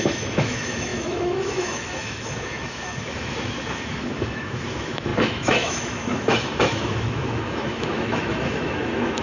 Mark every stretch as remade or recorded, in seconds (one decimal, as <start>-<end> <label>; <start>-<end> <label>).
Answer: 0.0-9.2 remade